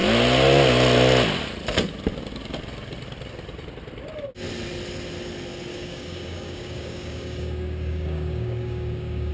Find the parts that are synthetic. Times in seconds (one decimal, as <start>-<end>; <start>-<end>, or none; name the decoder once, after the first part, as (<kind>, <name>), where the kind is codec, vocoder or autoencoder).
5.7-9.3 (codec, DAC)

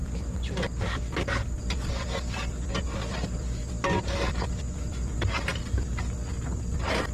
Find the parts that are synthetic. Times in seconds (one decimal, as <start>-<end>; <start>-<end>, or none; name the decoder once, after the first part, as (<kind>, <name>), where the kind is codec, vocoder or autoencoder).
none

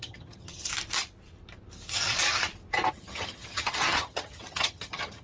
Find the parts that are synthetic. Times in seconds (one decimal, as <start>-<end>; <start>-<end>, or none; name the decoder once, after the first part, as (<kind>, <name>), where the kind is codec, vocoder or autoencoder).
0.0-0.7 (vocoder, HiFi-GAN); 2.9-5.2

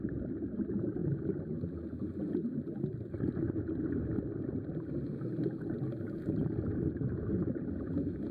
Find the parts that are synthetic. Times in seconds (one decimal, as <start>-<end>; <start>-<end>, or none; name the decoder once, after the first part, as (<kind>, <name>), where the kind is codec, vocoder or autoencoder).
none

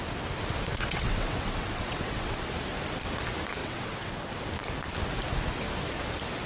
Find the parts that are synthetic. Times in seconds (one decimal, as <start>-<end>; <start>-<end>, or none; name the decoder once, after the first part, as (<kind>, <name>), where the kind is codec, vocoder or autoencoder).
0.7-2.5 (vocoder, WaveNeXt); 3.6-4.3